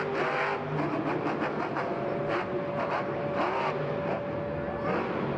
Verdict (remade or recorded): recorded